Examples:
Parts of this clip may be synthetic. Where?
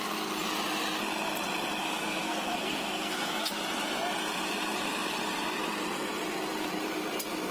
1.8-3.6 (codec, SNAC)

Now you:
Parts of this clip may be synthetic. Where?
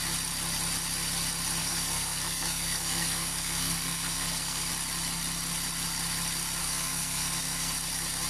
1.6-4.7 (codec, SNAC); 6.6-7.7